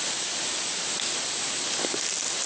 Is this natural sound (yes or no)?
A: yes